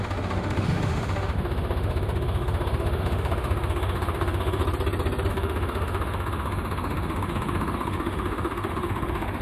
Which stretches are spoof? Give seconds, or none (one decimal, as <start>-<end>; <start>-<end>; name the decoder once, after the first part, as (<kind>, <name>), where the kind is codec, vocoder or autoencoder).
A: 0.0-4.6 (autoencoder, DAC-VAE); 5.3-9.4